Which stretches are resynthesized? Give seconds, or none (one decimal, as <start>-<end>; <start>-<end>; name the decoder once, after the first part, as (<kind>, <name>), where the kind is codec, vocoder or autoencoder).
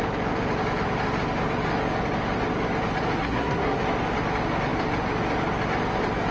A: 3.2-3.8 (codec, SNAC)